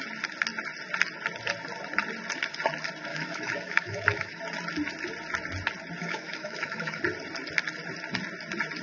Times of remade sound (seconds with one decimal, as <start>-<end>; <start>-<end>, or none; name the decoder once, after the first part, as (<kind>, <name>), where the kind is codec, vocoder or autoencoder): 3.1-4.4 (autoencoder, DAC-VAE); 6.0-7.0